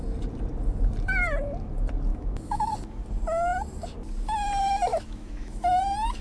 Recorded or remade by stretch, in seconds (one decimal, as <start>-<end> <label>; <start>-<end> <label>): 0.0-2.1 recorded; 2.1-2.7 remade; 2.7-4.9 recorded; 4.9-5.8 remade; 5.8-6.2 recorded